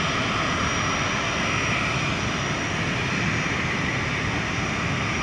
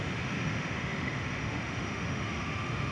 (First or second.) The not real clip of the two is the second